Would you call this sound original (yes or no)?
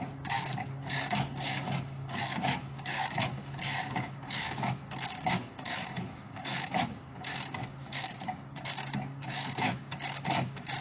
no